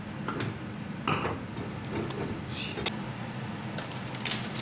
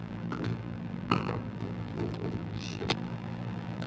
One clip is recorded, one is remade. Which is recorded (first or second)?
first